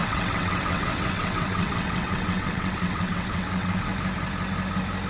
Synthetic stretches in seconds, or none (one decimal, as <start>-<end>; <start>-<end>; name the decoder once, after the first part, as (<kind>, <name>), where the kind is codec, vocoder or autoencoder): 0.0-3.9 (vocoder, WaveNeXt)